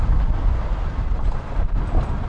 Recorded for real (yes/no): yes